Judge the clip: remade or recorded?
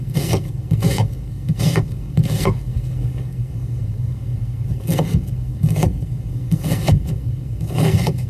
remade